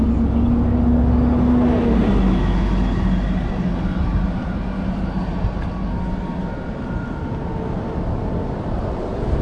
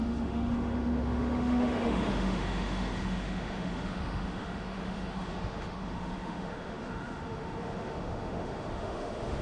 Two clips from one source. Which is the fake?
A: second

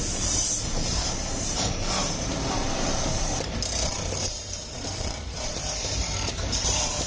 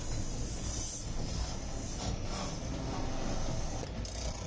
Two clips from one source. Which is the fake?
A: first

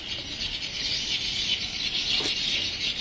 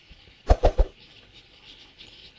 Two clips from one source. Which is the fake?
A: second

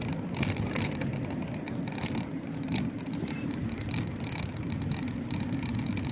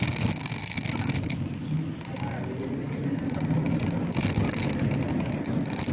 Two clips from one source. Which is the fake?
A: first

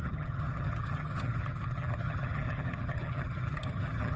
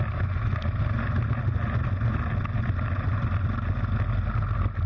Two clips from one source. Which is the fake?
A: first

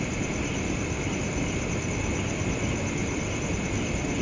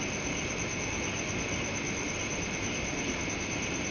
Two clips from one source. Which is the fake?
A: first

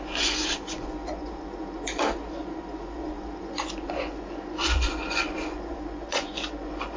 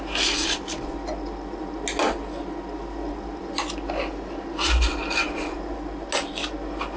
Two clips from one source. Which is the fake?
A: first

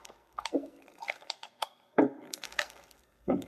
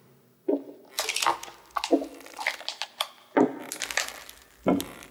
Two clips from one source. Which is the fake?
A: first